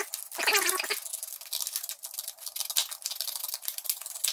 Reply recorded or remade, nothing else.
recorded